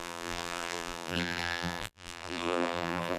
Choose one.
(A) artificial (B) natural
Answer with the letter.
A